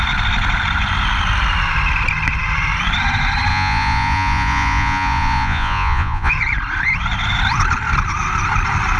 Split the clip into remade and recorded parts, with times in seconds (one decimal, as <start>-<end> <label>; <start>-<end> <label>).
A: 0.0-3.5 recorded; 3.5-6.3 remade; 6.3-9.0 recorded